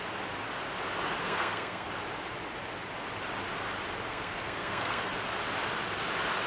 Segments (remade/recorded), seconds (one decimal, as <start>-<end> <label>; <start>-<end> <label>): 0.0-1.2 recorded; 1.2-1.9 remade; 1.9-4.1 recorded; 4.1-5.0 remade; 5.0-6.5 recorded